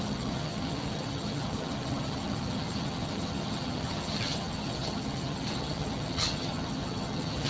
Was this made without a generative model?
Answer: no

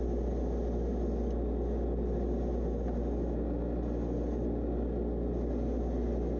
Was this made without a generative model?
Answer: yes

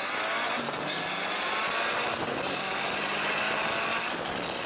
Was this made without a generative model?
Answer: yes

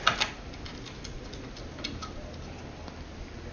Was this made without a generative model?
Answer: yes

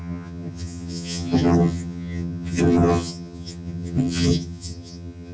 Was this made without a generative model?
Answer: no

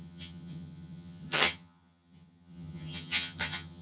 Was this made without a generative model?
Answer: no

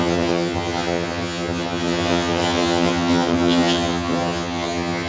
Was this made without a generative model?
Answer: no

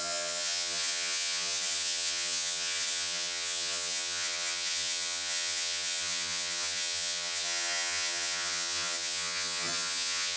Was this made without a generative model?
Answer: no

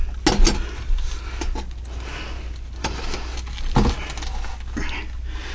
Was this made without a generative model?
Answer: yes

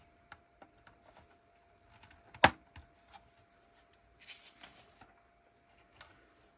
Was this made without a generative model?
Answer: yes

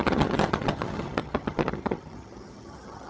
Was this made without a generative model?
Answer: no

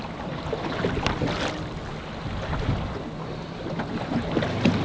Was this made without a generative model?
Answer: yes